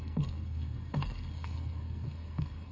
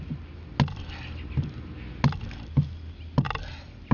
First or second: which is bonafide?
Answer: second